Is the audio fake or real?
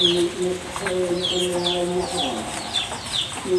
real